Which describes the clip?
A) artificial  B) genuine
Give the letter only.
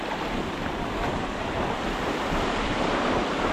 A